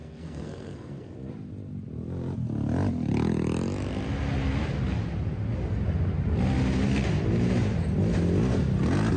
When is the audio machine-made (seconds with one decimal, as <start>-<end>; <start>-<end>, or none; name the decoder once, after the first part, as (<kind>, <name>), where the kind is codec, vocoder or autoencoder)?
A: 0.0-1.3 (codec, SNAC)